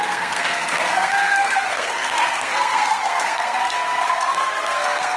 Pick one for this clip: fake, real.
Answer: fake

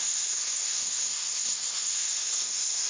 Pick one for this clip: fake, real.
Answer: fake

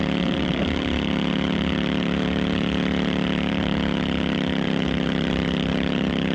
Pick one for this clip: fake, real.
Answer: fake